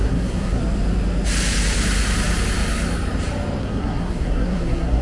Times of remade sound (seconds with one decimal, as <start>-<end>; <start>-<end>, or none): 0.0-0.6; 3.6-5.0